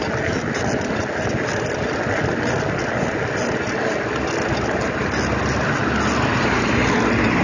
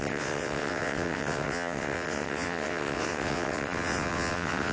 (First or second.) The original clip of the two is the first